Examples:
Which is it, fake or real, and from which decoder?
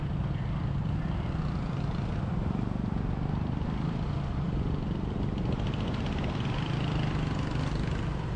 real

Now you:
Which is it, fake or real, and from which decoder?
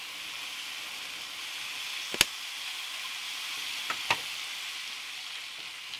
real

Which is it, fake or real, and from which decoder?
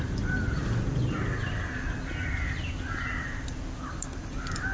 real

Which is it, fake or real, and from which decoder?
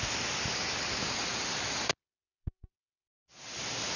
real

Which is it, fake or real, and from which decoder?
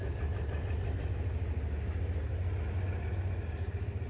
real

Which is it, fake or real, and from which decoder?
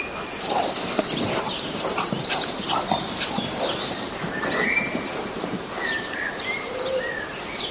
fake, vocoder, BigVGAN v2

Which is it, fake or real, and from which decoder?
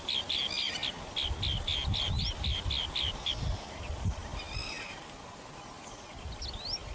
real